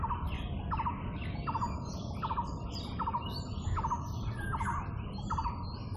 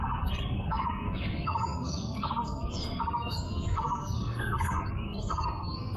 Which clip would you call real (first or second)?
first